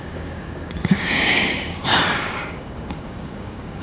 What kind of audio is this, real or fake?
fake